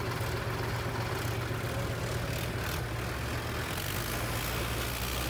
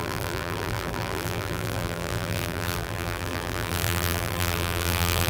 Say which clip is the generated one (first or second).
second